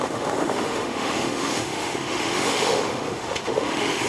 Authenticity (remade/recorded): remade